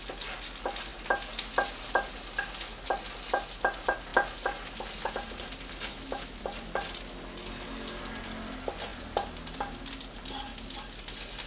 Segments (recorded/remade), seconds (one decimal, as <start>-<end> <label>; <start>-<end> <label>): 0.0-5.9 recorded; 5.9-6.4 remade; 6.4-11.5 recorded